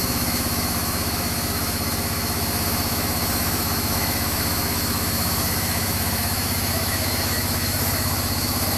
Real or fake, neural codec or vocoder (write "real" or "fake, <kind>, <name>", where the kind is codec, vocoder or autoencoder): fake, autoencoder, DAC-VAE